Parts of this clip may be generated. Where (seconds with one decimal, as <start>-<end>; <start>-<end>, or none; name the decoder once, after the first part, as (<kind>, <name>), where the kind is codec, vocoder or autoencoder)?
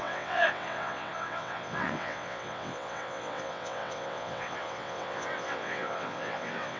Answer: 0.0-6.8 (vocoder, WaveNeXt)